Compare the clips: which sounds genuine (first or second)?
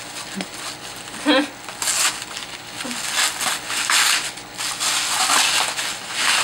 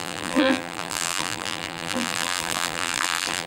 first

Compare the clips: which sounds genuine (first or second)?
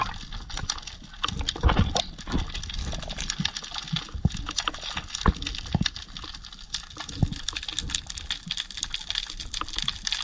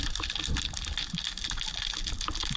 first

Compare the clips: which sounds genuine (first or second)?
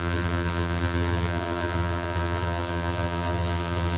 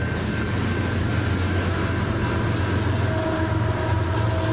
second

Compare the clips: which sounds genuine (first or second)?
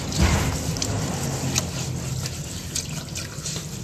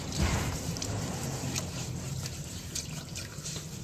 first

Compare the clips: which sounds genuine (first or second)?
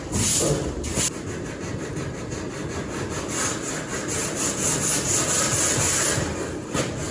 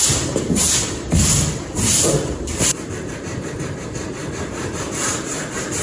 first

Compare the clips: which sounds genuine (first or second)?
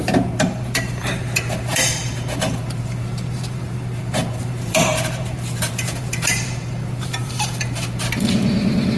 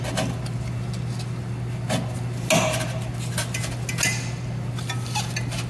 second